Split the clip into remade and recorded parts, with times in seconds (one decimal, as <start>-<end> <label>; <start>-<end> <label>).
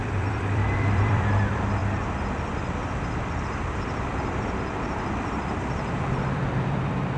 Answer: 0.0-1.8 remade; 1.8-2.5 recorded; 2.5-7.2 remade